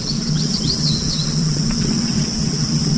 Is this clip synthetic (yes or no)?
yes